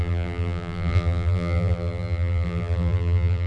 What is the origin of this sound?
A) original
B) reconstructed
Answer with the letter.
B